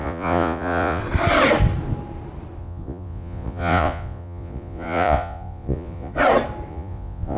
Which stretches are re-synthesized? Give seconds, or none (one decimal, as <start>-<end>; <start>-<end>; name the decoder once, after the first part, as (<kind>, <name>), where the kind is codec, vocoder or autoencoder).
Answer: 0.0-1.0 (vocoder, Vocos); 2.6-6.1; 6.7-7.4